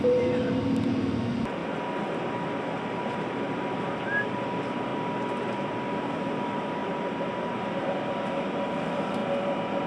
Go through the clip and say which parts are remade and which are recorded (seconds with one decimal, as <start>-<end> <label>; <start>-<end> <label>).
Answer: 0.0-1.6 remade; 1.6-3.0 recorded; 3.0-4.9 remade; 4.9-5.4 recorded; 5.4-9.2 remade; 9.2-9.9 recorded